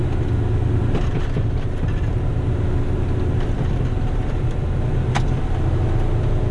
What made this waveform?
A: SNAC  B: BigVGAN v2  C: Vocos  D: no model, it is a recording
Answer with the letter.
D